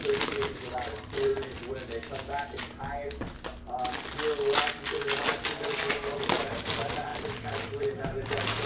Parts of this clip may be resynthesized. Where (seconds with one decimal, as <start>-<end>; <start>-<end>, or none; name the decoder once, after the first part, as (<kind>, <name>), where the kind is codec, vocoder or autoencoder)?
0.0-1.3 (vocoder, BigVGAN v2); 5.9-7.1; 7.8-8.7